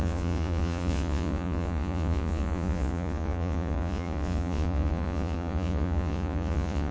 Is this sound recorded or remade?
remade